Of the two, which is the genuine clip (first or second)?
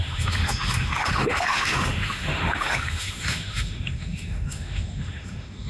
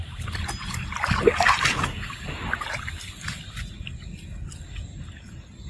second